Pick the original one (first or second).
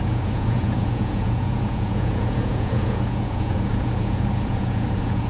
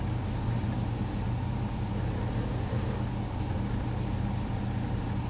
second